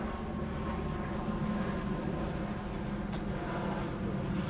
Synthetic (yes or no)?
no